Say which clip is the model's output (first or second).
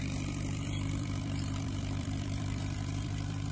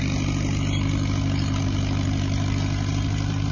first